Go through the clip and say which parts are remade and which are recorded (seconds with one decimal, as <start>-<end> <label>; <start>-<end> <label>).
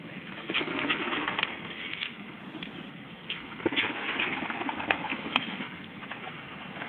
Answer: 0.0-2.4 remade; 2.4-2.9 recorded; 2.9-6.9 remade